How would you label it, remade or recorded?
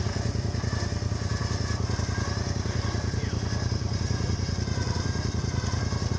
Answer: recorded